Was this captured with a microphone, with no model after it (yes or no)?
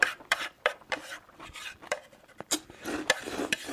no